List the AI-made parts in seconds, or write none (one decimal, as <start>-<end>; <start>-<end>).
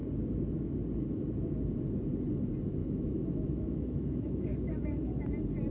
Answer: 2.8-5.2